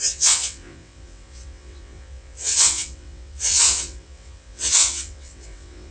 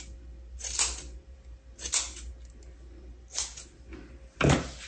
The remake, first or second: first